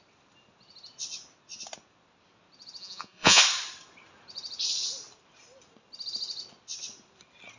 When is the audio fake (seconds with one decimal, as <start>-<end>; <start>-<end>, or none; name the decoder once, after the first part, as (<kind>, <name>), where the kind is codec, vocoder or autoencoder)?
2.8-3.4 (vocoder, Vocos)